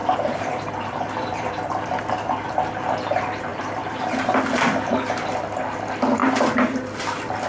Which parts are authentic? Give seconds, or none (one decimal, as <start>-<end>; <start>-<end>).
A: 2.1-3.5; 4.0-6.2; 6.8-7.5